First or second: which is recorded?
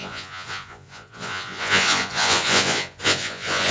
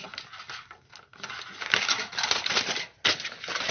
second